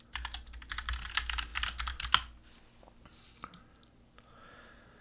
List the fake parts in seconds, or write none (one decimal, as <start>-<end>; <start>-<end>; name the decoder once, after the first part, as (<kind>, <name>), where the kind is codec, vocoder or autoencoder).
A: none